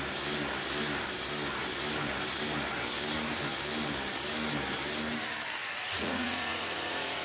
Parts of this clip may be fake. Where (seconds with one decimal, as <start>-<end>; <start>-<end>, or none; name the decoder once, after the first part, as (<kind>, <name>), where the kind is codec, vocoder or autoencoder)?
5.6-7.2 (vocoder, Vocos)